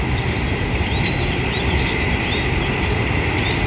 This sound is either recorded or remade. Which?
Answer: recorded